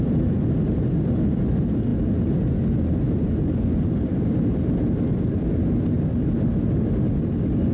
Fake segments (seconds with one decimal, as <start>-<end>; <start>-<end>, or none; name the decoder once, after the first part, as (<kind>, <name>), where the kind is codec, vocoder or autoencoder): none